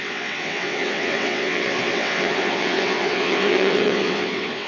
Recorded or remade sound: remade